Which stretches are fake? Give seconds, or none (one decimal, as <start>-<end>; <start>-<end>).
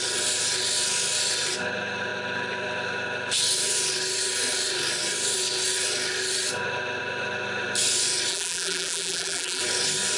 8.3-9.6